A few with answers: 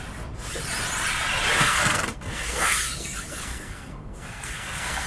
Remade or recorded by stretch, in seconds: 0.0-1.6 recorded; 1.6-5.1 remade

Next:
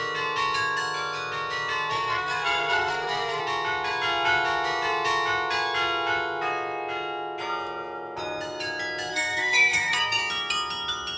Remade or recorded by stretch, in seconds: 0.0-1.9 recorded; 1.9-3.4 remade; 3.4-9.1 recorded; 9.1-10.2 remade; 10.2-11.2 recorded

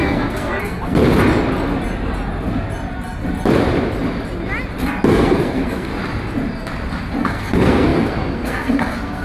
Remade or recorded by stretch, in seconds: 0.0-1.0 remade; 1.0-5.1 recorded; 5.1-5.9 remade; 5.9-7.2 recorded; 7.2-9.2 remade